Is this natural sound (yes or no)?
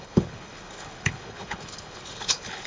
no